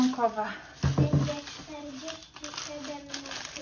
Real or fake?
real